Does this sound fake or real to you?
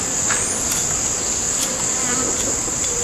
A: real